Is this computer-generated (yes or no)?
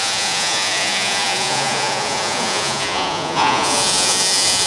yes